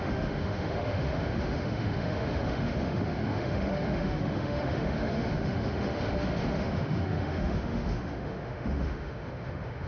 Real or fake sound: fake